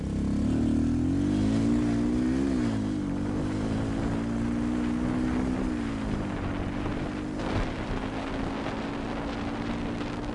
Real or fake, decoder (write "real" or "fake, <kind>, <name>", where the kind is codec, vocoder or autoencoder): real